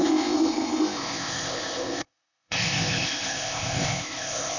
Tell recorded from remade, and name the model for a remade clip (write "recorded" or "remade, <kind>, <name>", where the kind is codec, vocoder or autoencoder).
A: remade, codec, ZipCodec